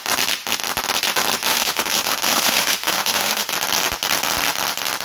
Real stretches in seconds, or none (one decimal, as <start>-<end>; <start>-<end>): 0.0-1.5; 3.5-5.0